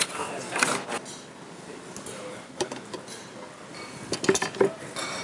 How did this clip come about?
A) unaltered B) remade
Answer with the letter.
A